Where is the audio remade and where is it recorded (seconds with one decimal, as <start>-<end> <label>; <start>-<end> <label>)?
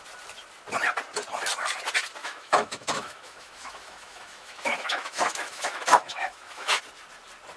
0.0-2.2 recorded; 2.2-6.8 remade; 6.8-7.6 recorded